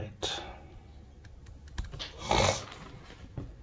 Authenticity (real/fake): real